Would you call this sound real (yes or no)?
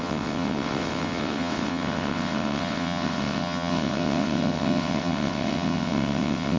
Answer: no